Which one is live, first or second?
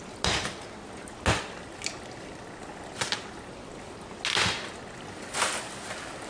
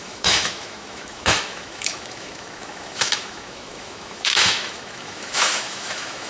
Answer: first